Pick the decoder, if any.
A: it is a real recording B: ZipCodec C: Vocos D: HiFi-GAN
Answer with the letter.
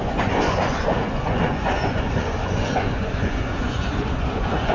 C